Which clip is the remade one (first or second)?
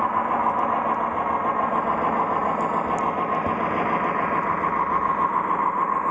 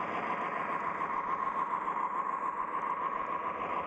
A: second